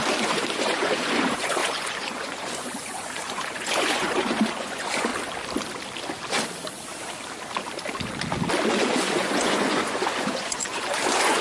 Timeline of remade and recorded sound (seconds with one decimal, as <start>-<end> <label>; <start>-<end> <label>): 0.0-5.1 remade; 5.1-8.7 recorded; 8.7-11.4 remade